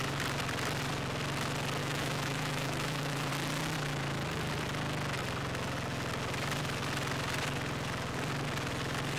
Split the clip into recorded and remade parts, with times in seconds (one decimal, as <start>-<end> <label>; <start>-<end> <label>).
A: 0.0-1.8 recorded; 1.8-3.3 remade; 3.3-9.2 recorded